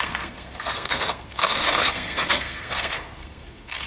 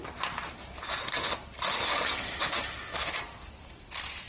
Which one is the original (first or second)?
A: second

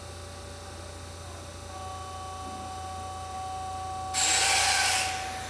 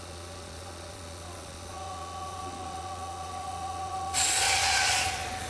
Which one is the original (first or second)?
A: first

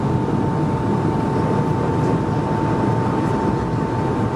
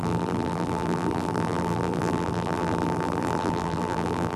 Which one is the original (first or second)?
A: first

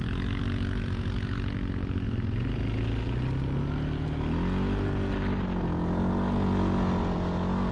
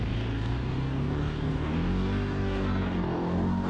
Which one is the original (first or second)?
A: first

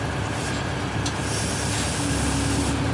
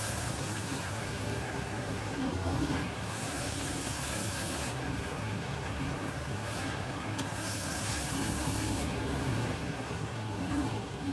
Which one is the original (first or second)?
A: first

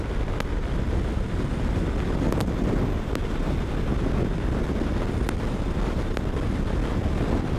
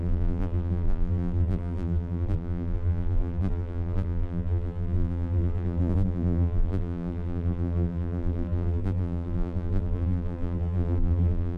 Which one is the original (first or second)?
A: first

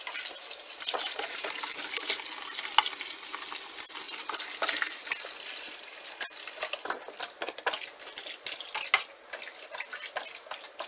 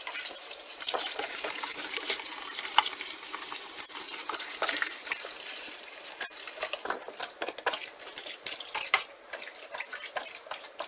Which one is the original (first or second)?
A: first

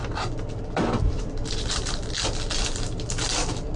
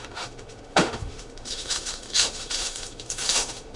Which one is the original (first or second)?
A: first